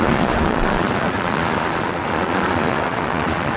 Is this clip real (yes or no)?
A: no